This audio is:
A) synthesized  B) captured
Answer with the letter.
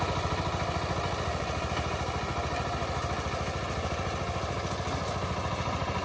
B